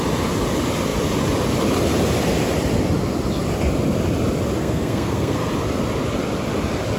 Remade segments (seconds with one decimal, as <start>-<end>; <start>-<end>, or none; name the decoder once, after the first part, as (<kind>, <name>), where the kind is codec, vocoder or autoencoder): 4.6-5.5 (codec, SNAC)

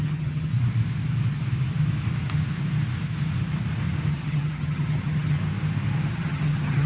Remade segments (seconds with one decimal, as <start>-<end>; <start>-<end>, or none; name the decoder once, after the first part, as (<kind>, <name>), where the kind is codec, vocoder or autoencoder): 0.0-0.5 (vocoder, HiFi-GAN); 4.1-5.4; 6.1-6.9

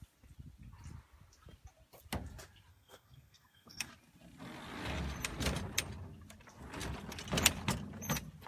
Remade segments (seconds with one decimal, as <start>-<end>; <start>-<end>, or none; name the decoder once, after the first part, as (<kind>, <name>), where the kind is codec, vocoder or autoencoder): 2.7-3.9 (codec, SNAC)